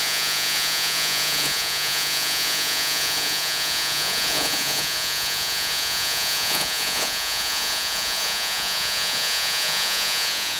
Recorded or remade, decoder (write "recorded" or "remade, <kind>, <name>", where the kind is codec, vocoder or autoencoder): remade, vocoder, Vocos